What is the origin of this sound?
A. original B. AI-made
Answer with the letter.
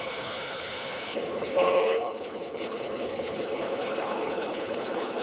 B